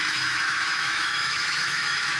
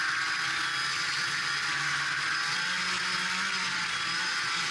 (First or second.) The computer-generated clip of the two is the first